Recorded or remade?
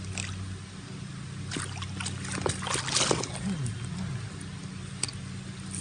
recorded